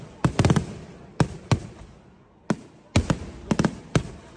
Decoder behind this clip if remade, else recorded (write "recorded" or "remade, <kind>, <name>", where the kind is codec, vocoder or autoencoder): recorded